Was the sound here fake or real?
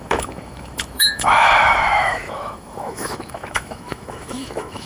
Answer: fake